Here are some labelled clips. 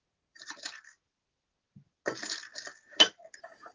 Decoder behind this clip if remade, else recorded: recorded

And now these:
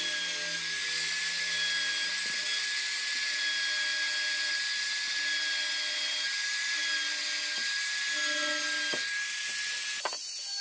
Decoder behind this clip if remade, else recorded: recorded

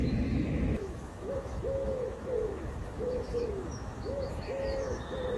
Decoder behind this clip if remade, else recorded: remade, autoencoder, DAC-VAE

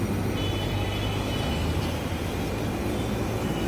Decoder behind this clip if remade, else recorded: recorded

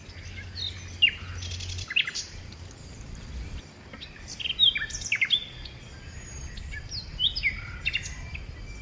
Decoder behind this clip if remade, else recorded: recorded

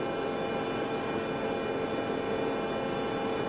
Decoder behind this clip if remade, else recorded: recorded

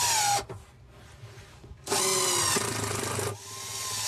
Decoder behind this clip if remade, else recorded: recorded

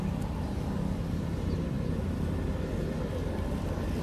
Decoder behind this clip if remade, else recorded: recorded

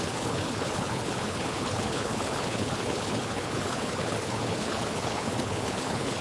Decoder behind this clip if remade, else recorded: remade, codec, HILCodec